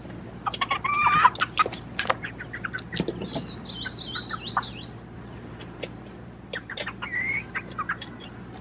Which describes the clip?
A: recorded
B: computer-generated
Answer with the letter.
A